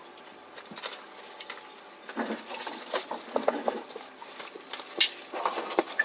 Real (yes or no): yes